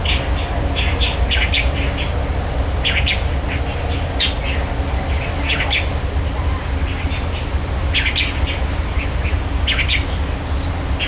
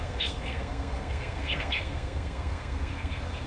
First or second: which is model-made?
second